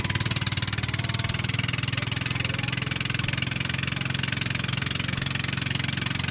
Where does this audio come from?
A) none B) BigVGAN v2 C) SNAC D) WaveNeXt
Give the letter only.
A